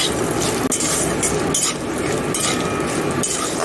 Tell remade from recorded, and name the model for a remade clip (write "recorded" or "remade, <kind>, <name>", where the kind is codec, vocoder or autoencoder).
recorded